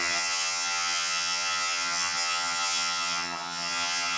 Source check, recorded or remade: remade